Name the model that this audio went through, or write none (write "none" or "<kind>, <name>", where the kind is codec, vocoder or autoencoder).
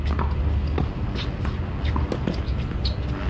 none